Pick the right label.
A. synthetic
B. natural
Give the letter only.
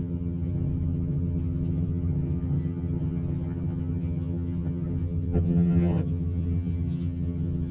A